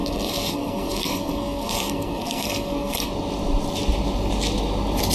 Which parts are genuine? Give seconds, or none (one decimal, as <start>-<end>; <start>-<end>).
3.1-5.1